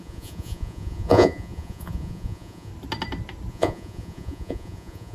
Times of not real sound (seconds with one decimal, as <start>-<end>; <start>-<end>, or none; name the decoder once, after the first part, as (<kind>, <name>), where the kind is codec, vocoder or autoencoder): 0.0-2.7 (vocoder, Vocos); 3.5-5.1